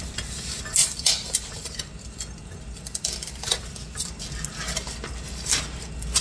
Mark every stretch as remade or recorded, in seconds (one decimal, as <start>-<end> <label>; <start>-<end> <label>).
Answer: 0.0-0.8 recorded; 0.8-4.1 remade; 4.1-6.2 recorded